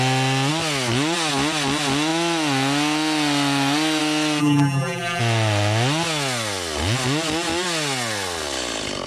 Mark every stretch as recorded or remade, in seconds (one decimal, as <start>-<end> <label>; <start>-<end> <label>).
0.0-4.4 recorded; 4.4-5.2 remade; 5.2-9.1 recorded